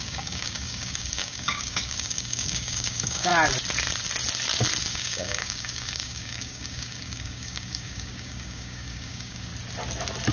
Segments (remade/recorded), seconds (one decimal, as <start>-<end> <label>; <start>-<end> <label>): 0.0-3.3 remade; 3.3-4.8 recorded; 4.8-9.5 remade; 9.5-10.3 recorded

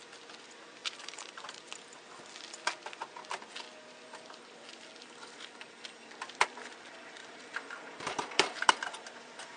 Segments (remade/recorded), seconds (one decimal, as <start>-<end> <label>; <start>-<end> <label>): 0.0-0.8 recorded; 0.8-1.7 remade; 1.7-7.2 recorded; 7.2-8.7 remade; 8.7-9.6 recorded

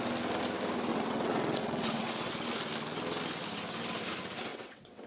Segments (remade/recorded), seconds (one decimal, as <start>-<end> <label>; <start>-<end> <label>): 0.0-0.9 recorded; 0.9-2.3 remade; 2.3-4.5 recorded; 4.5-5.1 remade

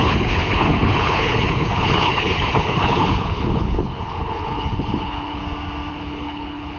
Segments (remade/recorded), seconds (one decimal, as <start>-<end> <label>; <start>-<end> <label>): 0.0-5.4 remade; 5.4-5.9 recorded; 5.9-6.8 remade